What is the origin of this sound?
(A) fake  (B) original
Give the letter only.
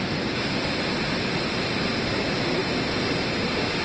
B